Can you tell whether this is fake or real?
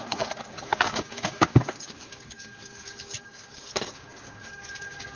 fake